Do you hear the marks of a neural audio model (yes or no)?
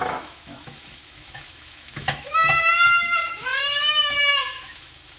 yes